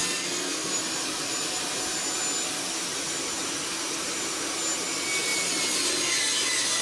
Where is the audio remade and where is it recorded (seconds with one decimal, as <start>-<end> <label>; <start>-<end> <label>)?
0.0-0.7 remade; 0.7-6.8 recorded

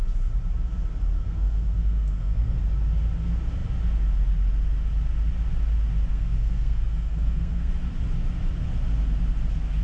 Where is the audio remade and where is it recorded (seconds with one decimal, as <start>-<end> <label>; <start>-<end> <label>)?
0.0-1.2 recorded; 1.2-2.6 remade; 2.6-6.1 recorded; 6.1-7.7 remade; 7.7-9.8 recorded

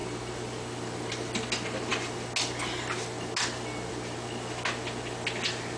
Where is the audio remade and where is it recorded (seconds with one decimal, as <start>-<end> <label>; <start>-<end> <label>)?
0.0-5.8 recorded